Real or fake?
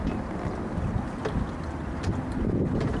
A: real